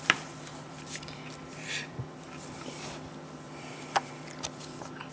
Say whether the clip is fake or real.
fake